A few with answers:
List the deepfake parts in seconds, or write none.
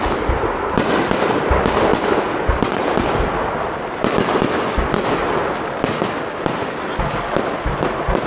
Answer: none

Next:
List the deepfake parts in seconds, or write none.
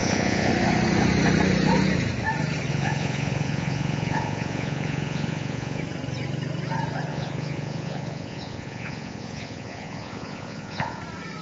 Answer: 0.0-0.5 (vocoder, Vocos); 2.7-5.8; 7.1-11.0